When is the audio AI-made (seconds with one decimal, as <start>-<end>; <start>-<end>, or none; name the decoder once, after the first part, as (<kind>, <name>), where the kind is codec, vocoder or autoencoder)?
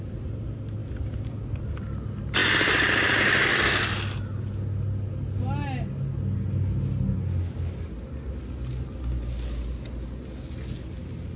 0.8-1.7 (vocoder, BigVGAN v2)